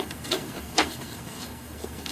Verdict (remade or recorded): remade